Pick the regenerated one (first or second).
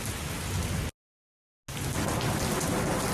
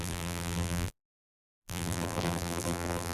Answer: second